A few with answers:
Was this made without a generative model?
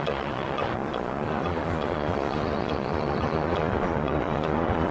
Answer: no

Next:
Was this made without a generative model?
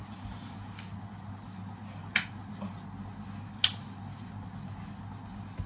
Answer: yes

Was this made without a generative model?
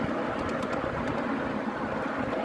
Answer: yes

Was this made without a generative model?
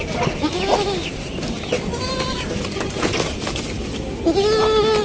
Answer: yes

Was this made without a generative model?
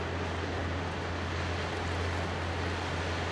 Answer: yes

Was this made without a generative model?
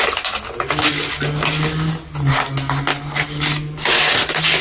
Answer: yes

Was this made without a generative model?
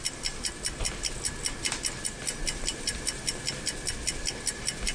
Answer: yes